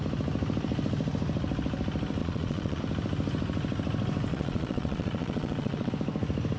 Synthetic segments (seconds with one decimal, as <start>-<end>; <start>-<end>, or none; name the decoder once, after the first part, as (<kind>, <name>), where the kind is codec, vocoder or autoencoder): 2.2-2.8 (vocoder, Vocos); 4.3-5.9